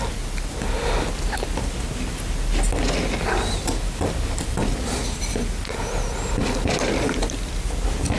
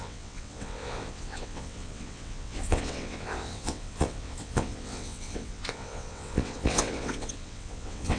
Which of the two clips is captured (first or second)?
first